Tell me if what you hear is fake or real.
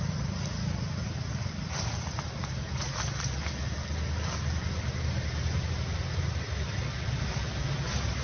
real